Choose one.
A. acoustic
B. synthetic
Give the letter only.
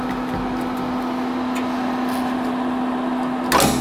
A